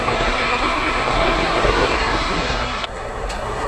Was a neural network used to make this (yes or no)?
yes